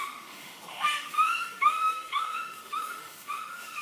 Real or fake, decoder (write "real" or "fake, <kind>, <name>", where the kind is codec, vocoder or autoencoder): fake, autoencoder, DAC-VAE